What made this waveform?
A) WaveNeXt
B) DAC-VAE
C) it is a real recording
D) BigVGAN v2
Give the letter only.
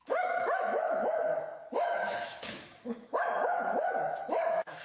B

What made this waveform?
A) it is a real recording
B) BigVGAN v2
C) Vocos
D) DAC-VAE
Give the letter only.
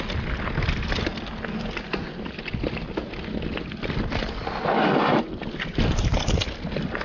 A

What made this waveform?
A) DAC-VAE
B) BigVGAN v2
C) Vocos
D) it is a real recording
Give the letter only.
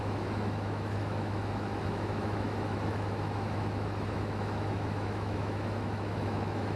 A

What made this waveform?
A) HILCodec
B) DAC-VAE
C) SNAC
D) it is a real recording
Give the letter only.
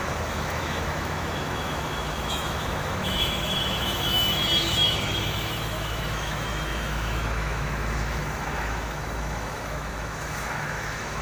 B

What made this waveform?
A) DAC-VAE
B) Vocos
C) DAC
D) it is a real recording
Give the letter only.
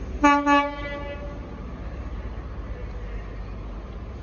D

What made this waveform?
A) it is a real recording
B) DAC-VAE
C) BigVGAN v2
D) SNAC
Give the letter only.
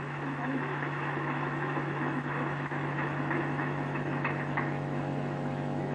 B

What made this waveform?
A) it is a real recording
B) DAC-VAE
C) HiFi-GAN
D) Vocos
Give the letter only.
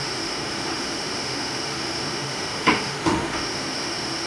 B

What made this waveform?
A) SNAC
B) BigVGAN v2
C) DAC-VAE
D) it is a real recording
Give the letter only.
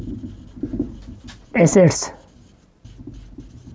D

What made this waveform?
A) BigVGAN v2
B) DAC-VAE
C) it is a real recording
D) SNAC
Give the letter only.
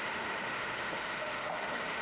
B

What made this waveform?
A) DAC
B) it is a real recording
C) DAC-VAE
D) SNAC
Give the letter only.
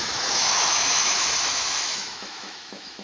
C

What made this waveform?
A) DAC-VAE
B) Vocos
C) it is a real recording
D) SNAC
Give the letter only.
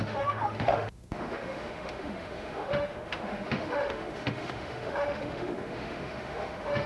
A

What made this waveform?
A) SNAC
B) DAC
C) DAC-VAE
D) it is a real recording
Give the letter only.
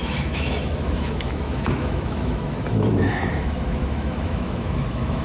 C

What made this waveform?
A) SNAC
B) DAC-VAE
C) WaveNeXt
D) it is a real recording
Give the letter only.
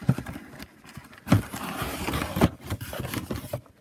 D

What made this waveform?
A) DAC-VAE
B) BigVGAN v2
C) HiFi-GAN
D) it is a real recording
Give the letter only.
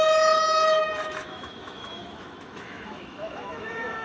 A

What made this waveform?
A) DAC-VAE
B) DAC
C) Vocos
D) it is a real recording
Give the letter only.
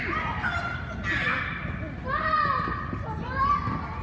D